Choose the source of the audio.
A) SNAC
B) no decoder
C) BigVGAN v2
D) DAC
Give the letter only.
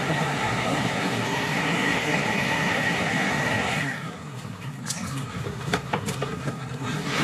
A